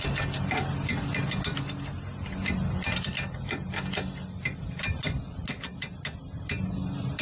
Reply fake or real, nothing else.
fake